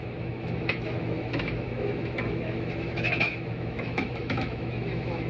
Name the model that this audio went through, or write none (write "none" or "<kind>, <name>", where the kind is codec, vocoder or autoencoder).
autoencoder, DAC-VAE